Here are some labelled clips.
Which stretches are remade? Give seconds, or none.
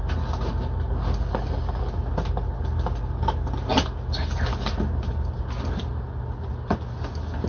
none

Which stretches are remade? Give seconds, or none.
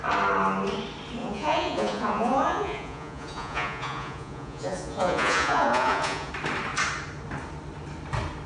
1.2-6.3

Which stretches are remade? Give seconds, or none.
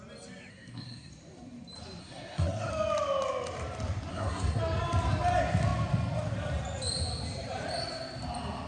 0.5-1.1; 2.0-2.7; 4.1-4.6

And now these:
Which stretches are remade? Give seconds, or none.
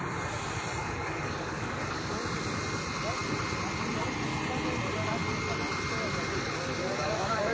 0.8-2.1; 6.8-7.5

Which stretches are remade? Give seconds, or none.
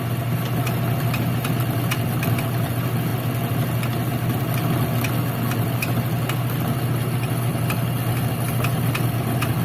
none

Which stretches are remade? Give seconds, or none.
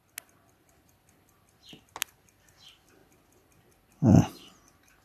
none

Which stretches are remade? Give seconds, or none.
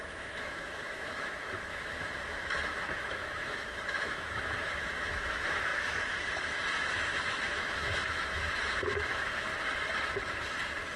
0.0-9.5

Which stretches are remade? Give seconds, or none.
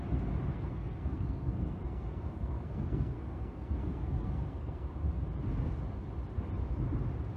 0.5-4.9